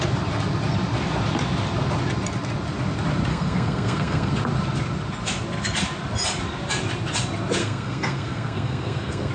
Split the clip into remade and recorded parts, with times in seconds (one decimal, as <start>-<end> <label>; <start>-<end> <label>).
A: 0.0-3.3 recorded; 3.3-4.3 remade; 4.3-7.6 recorded; 7.6-9.3 remade